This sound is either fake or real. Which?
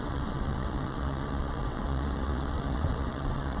fake